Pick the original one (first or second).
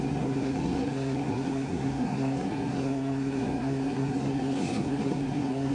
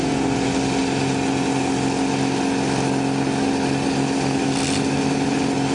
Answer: second